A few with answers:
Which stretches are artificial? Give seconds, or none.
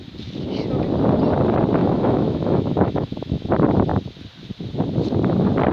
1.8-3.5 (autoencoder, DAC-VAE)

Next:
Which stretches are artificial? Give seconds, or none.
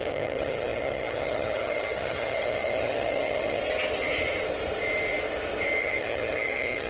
0.0-3.6 (vocoder, HiFi-GAN); 5.8-6.9